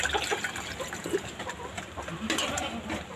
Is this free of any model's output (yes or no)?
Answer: yes